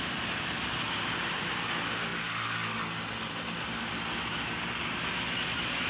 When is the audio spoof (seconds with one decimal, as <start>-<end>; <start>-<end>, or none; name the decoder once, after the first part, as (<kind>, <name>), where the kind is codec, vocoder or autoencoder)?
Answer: none